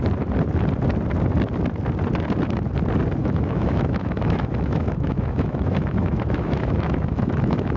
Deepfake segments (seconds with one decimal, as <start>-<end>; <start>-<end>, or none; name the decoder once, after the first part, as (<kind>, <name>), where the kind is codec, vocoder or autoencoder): 3.2-7.8 (autoencoder, DAC-VAE)